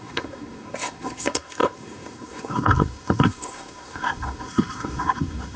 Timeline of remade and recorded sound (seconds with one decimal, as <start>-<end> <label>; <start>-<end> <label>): 0.0-5.6 remade